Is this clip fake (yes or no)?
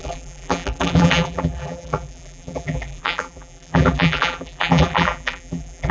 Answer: yes